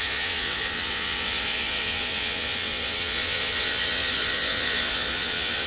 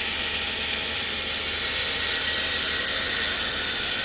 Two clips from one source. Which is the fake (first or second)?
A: first